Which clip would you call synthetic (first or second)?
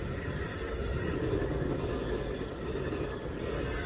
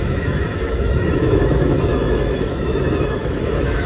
second